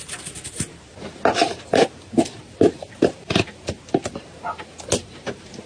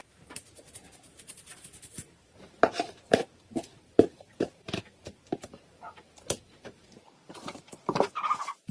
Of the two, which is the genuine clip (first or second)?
first